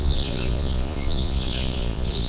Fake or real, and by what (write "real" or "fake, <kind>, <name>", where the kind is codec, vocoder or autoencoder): fake, vocoder, Vocos